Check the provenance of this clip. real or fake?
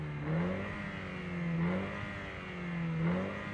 real